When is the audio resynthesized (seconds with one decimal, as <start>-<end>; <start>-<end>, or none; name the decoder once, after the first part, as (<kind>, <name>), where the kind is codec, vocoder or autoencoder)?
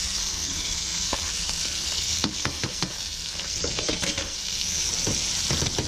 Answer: 0.0-4.9 (codec, SNAC)